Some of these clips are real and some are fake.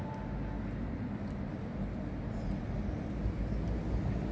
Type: real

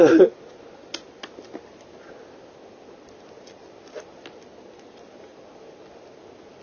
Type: real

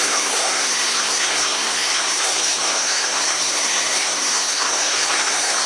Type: fake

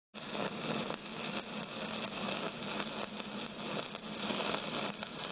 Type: real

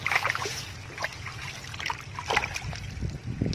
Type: real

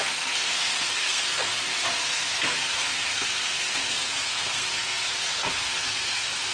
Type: fake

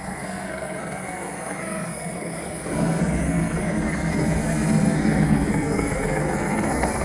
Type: fake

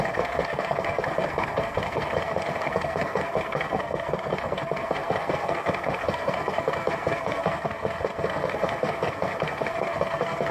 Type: fake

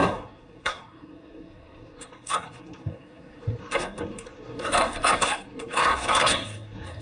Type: fake